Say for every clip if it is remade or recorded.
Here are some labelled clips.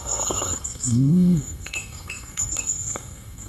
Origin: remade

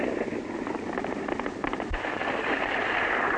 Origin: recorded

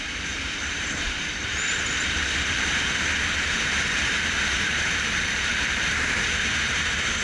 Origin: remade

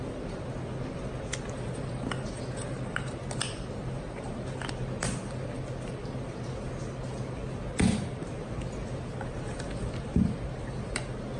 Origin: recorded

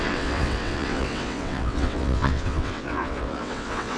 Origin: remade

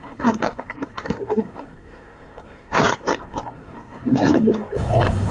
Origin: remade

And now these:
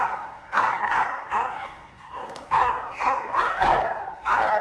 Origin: remade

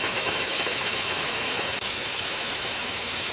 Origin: remade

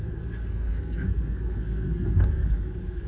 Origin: remade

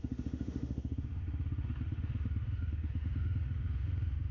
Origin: remade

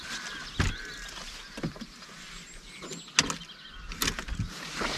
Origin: recorded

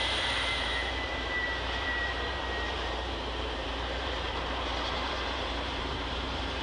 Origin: remade